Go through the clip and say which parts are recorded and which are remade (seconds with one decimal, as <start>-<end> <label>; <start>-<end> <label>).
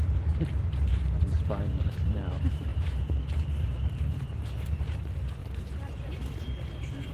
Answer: 0.0-5.4 remade; 5.4-7.1 recorded